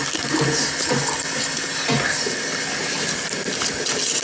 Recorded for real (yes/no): yes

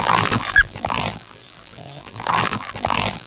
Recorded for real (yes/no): no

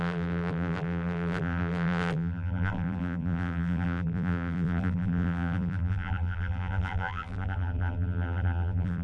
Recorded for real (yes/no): no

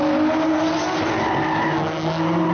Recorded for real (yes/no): yes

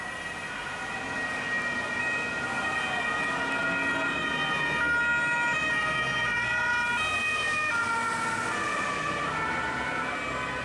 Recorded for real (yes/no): yes